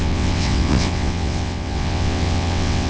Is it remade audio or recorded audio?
remade